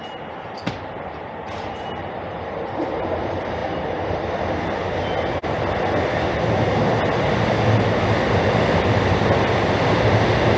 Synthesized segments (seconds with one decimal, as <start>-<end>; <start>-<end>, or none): none